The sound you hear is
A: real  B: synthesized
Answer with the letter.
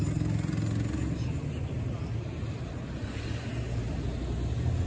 A